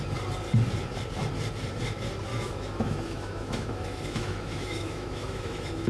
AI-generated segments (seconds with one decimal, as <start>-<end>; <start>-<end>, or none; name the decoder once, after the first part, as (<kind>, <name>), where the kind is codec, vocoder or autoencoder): 2.3-5.9 (autoencoder, DAC-VAE)